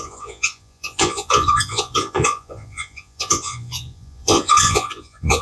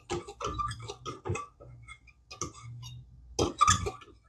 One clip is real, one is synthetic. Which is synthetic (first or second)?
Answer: first